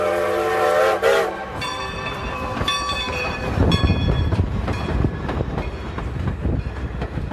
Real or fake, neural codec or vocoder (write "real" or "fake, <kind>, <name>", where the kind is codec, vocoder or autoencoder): fake, vocoder, BigVGAN v2